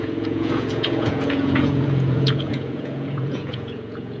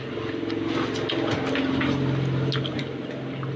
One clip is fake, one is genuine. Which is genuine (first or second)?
second